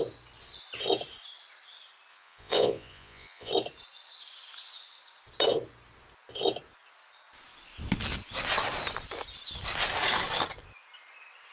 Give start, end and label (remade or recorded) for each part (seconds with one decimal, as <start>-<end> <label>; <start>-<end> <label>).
0.0-2.1 recorded; 2.1-3.5 remade; 3.5-11.5 recorded